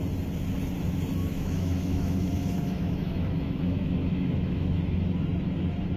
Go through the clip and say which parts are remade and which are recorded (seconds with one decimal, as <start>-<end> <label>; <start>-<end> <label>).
0.0-1.2 recorded; 1.2-4.8 remade; 4.8-6.0 recorded